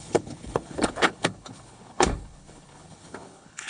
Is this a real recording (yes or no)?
no